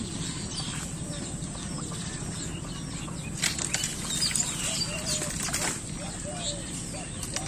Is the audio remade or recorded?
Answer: recorded